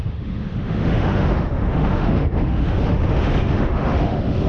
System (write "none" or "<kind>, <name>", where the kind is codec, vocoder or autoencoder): autoencoder, DAC-VAE